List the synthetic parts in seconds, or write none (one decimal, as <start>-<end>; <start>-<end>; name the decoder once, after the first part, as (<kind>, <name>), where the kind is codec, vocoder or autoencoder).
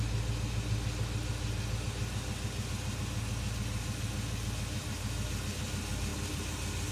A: 6.1-6.9 (vocoder, BigVGAN v2)